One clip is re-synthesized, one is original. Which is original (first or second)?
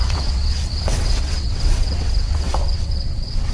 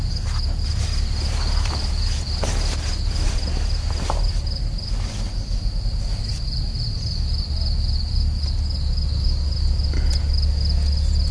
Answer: second